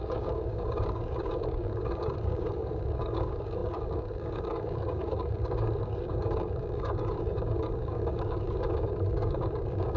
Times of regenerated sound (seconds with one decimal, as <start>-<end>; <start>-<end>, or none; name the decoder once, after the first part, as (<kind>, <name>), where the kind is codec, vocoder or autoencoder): 0.0-10.0 (codec, DAC)